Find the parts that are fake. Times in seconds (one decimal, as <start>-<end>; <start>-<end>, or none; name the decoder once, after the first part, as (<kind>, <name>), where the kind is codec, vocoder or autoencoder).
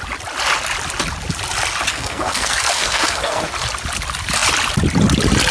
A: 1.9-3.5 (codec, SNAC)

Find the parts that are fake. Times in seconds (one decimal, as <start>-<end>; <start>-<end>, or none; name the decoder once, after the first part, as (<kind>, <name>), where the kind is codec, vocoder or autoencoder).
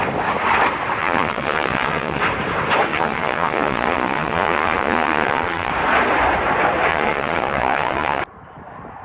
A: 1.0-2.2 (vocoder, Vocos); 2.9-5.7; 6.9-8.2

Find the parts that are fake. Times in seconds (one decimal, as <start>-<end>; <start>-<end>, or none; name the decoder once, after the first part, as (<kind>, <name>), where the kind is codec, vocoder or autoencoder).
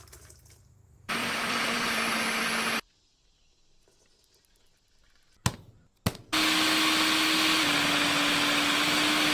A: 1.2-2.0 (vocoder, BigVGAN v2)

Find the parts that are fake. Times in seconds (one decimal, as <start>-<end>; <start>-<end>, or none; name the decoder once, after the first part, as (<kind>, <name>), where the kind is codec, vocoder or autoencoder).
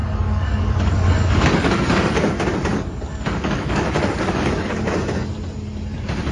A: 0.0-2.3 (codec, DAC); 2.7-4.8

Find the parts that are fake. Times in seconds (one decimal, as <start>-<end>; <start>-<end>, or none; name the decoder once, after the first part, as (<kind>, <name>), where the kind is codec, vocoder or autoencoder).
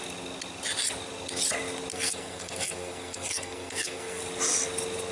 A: 1.9-4.2 (codec, SNAC)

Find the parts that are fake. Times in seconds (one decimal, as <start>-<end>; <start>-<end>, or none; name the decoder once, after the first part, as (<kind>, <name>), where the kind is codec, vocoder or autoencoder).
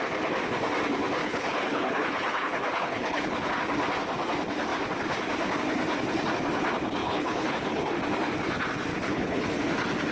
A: 1.2-3.5 (codec, HILCodec); 7.0-7.9; 8.9-9.6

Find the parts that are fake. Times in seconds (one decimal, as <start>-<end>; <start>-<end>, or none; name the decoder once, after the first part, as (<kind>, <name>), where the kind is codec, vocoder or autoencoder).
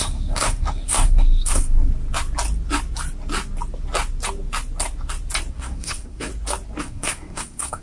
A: 0.0-1.9 (codec, SNAC); 5.5-6.3; 6.8-7.8